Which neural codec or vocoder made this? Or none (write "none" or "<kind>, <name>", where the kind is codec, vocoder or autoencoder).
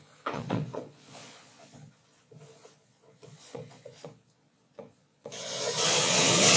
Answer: vocoder, Vocos